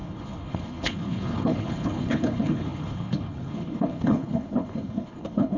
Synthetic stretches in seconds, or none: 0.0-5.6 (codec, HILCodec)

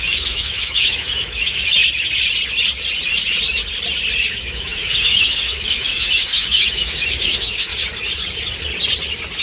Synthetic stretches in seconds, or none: 0.0-1.8 (autoencoder, DAC-VAE); 4.3-7.7

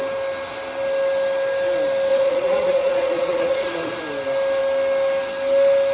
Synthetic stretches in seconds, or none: 2.1-4.0 (vocoder, Vocos)

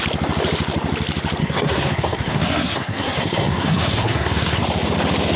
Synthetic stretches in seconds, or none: 1.4-4.6 (codec, SNAC)

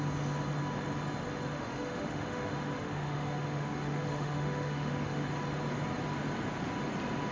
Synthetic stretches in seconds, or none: 1.5-5.3 (autoencoder, DAC-VAE)

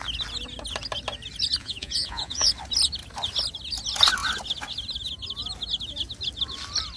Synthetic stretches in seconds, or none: 1.6-2.5 (vocoder, Vocos)

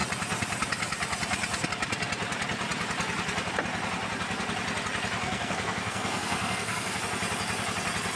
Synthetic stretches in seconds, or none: 5.2-7.0 (codec, SNAC)